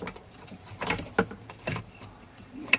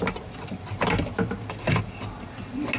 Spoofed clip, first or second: first